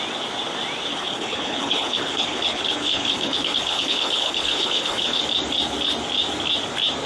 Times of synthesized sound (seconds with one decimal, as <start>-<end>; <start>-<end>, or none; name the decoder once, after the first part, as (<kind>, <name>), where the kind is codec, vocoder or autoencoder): 0.9-5.2 (codec, HILCodec)